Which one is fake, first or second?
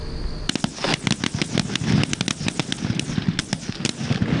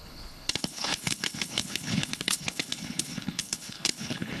second